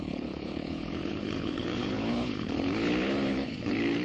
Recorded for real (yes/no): no